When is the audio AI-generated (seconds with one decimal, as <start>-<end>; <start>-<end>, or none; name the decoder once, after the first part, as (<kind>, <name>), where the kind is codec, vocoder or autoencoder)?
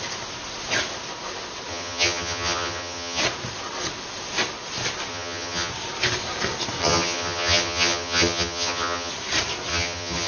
1.7-3.2 (vocoder, HiFi-GAN); 5.1-5.7; 6.8-9.1; 9.7-10.3